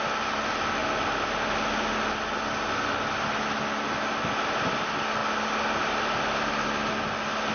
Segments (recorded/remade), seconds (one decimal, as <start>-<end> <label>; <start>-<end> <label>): 0.0-7.5 recorded